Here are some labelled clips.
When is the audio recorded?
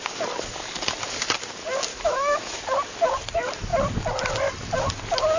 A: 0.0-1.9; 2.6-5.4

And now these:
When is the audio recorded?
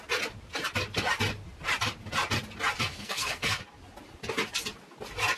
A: 0.0-2.9; 3.6-5.4